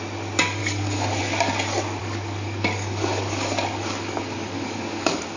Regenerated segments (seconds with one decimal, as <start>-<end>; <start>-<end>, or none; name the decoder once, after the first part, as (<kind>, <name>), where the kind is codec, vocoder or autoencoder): 0.6-1.2 (codec, DAC); 2.0-5.4